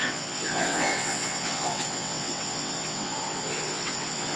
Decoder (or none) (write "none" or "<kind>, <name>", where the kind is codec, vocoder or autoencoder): vocoder, WaveNeXt